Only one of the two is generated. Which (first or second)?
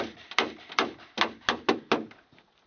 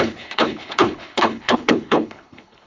second